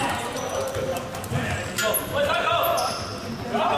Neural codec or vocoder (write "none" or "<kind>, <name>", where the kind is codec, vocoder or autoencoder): none